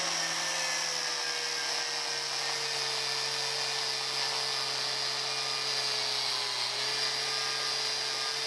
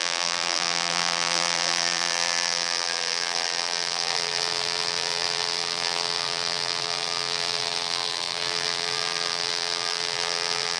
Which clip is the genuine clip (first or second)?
first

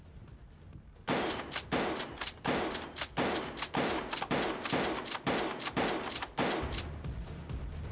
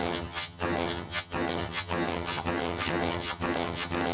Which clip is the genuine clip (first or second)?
first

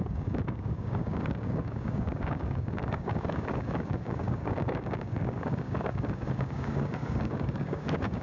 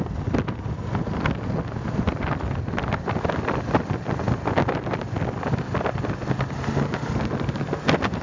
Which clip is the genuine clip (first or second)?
second